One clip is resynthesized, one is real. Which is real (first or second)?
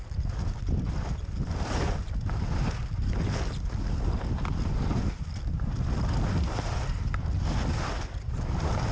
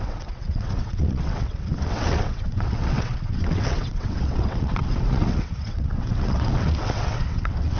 first